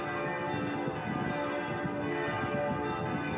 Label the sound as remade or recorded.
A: recorded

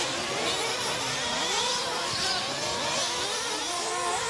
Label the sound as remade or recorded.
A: recorded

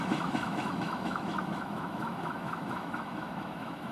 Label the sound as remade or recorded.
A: remade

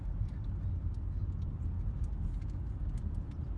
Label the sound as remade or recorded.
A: recorded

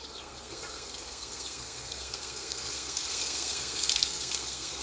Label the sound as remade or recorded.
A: remade